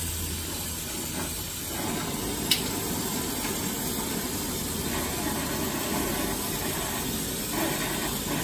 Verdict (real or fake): real